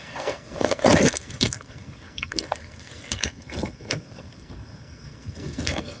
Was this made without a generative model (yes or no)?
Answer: no